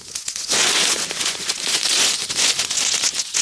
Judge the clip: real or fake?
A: fake